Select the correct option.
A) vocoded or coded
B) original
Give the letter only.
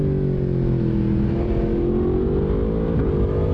B